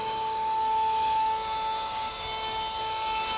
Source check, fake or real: fake